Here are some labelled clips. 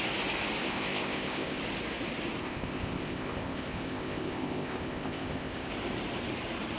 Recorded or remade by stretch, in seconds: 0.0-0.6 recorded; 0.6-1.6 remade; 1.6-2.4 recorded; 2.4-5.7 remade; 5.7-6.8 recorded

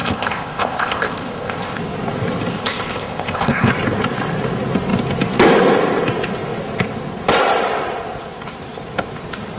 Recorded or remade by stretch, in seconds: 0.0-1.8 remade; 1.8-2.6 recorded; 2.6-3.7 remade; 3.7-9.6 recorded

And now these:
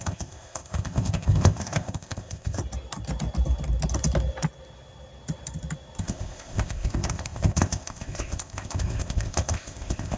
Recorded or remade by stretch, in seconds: 0.0-2.6 remade; 2.6-6.0 recorded; 6.0-10.2 remade